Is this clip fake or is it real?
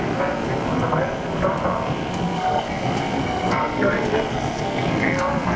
fake